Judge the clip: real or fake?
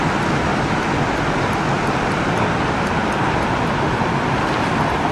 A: real